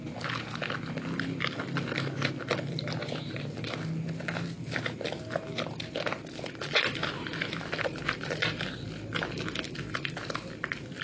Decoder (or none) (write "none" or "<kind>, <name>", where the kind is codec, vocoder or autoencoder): none